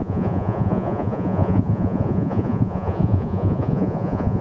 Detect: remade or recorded remade